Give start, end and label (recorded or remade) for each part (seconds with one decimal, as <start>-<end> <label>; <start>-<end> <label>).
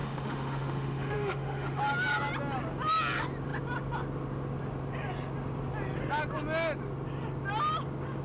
0.0-1.8 remade; 1.8-8.2 recorded